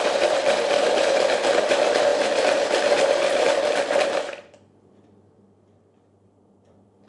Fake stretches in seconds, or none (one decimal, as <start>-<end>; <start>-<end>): 0.0-7.1